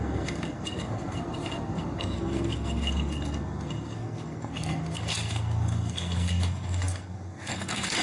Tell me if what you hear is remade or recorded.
remade